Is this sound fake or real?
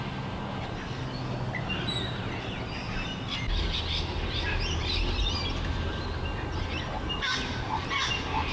real